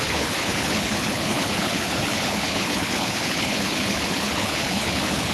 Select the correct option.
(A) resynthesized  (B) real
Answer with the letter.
A